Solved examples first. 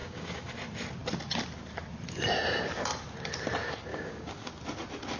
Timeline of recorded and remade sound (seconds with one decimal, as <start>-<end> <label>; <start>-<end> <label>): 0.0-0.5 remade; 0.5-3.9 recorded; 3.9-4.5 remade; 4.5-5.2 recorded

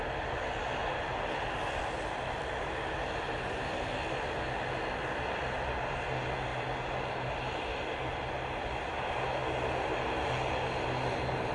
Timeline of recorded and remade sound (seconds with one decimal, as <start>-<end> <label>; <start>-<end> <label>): 0.0-11.5 recorded

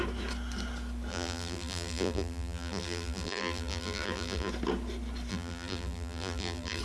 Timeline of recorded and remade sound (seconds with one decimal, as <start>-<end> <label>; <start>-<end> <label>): 0.0-1.1 recorded; 1.1-4.5 remade; 4.5-5.3 recorded; 5.3-6.8 remade